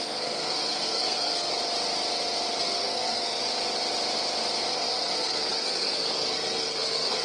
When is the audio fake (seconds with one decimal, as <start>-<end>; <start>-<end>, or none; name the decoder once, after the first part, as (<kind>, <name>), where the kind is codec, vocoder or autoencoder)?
0.0-1.5 (codec, SNAC); 2.6-3.4; 4.7-7.2